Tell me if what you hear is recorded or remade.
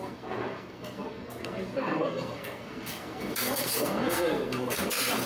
remade